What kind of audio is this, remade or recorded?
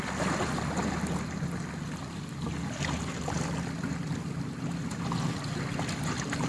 recorded